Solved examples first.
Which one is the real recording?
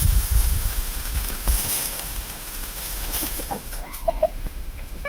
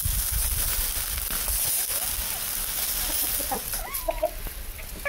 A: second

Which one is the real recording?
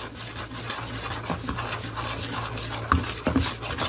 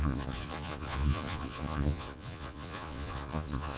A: first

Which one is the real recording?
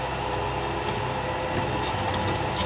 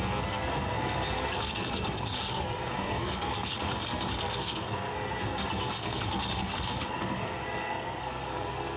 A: first